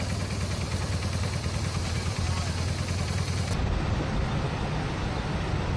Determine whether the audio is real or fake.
real